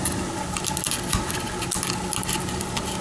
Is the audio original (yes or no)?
yes